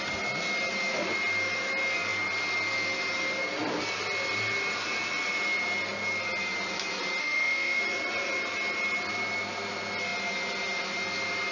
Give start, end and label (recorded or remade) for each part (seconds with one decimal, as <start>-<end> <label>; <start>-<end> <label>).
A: 0.0-7.2 recorded; 7.2-7.8 remade; 7.8-11.5 recorded